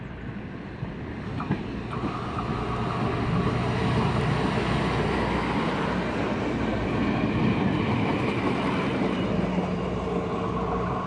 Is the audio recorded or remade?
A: recorded